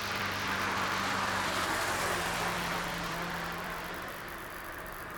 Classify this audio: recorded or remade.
remade